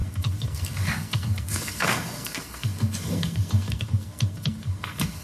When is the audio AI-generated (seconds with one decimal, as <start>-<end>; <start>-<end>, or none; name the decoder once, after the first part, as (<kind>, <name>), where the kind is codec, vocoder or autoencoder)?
0.0-5.2 (codec, SNAC)